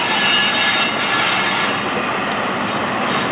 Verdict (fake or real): real